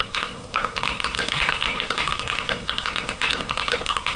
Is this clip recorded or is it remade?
remade